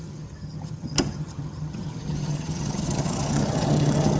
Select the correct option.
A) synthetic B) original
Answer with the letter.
A